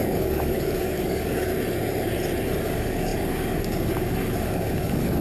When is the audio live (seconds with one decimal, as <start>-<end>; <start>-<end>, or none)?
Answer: 1.5-2.6